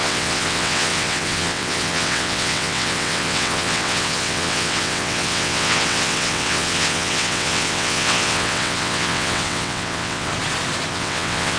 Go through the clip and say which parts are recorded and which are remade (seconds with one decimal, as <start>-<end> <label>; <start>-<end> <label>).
0.0-10.3 remade; 10.3-10.9 recorded; 10.9-11.6 remade